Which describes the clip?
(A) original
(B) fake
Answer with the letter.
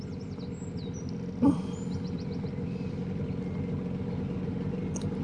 A